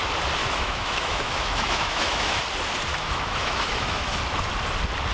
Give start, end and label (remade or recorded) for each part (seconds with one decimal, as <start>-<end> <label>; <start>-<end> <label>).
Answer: 0.0-0.4 recorded; 0.4-2.4 remade; 2.4-2.9 recorded; 2.9-4.2 remade; 4.2-5.1 recorded